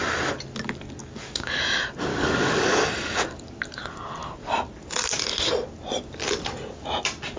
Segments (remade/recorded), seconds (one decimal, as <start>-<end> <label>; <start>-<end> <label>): 0.0-1.0 recorded; 1.0-1.6 remade; 1.6-2.1 recorded; 2.1-2.6 remade; 2.6-7.4 recorded